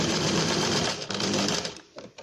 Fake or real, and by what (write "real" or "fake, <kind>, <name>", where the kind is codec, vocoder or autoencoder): fake, vocoder, BigVGAN v2